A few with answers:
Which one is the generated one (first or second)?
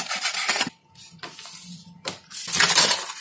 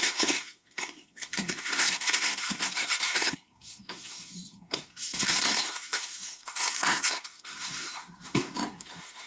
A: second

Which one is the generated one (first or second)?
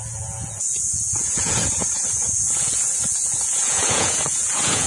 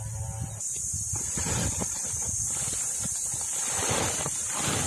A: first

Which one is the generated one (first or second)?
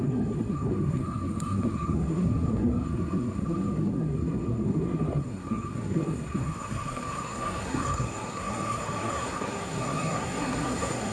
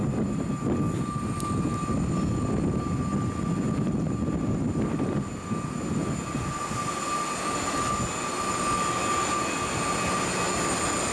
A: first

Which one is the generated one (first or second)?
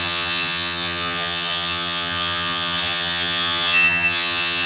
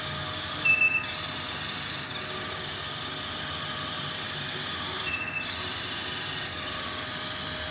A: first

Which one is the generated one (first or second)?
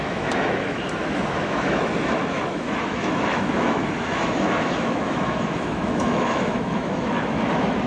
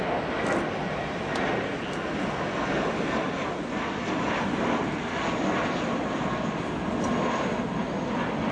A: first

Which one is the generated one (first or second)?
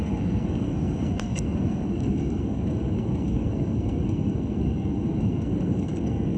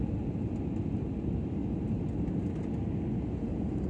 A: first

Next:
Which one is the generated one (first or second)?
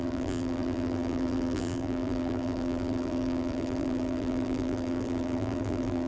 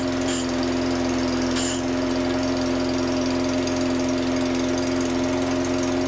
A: first